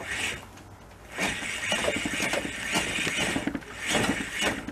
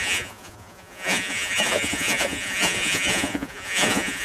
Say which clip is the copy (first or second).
second